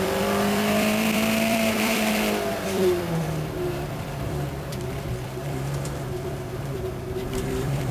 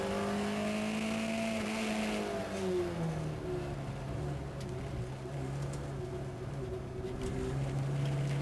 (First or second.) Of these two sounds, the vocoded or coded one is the first